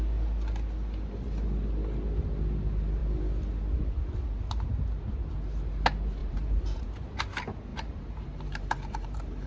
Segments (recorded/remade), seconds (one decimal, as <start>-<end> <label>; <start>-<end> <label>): 0.0-6.2 recorded; 6.2-6.8 remade; 6.8-7.7 recorded; 7.7-9.5 remade